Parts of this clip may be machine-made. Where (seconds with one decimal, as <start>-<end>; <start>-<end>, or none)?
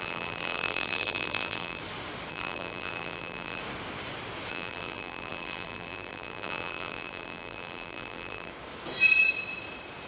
0.0-1.8; 2.3-3.6; 4.5-8.5